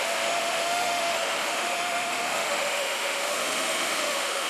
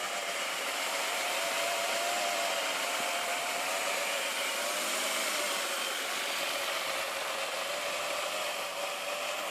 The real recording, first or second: second